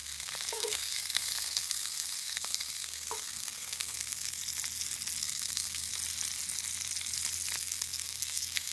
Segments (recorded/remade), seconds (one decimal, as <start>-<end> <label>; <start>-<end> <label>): 0.0-4.4 remade; 4.4-5.2 recorded; 5.2-5.9 remade; 5.9-7.6 recorded; 7.6-8.7 remade